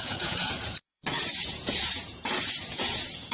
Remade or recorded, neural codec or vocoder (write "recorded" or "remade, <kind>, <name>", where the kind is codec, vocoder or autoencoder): remade, vocoder, Vocos